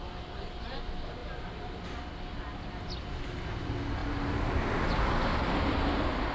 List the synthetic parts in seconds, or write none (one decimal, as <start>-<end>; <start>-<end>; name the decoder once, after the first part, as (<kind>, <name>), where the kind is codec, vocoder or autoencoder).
none